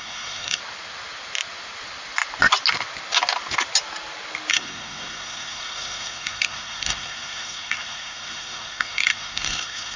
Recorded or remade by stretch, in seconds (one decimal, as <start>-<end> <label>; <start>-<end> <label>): 0.0-0.6 remade; 0.6-4.5 recorded; 4.5-10.0 remade